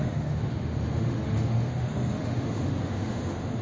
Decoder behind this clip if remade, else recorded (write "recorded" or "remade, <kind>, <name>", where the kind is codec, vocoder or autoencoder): remade, autoencoder, DAC-VAE